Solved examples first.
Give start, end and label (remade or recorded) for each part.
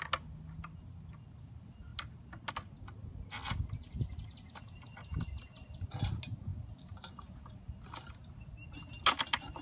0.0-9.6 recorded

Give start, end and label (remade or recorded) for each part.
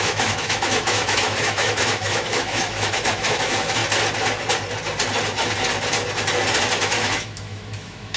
0.0-3.8 remade; 3.8-6.8 recorded; 6.8-8.2 remade